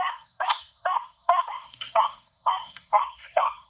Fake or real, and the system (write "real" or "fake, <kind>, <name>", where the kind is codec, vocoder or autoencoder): fake, codec, SNAC